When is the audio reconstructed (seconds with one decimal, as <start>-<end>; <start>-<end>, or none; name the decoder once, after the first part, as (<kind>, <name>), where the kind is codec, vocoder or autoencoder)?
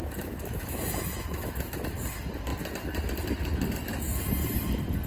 0.0-2.0 (autoencoder, DAC-VAE)